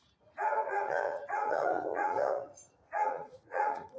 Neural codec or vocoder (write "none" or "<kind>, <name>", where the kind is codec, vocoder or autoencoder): vocoder, Vocos